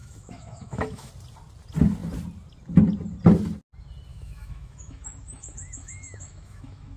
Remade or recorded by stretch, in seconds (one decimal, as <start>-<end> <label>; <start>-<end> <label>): 0.0-1.1 remade; 1.1-4.1 recorded; 4.1-7.0 remade